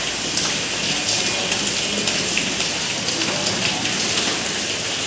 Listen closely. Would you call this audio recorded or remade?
recorded